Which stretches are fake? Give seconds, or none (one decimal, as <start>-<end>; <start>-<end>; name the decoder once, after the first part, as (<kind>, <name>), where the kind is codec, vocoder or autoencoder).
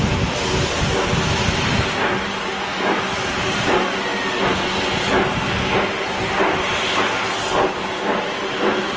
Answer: 2.5-3.0 (autoencoder, DAC-VAE)